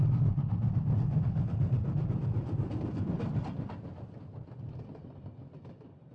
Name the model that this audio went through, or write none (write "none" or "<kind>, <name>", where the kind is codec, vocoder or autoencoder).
none